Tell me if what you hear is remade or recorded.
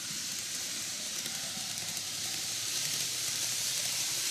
remade